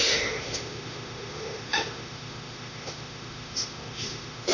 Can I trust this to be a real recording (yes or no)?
no